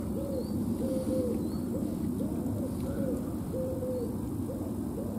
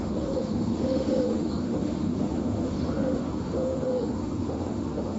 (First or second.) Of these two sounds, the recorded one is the first